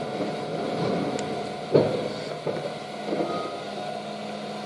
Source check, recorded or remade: recorded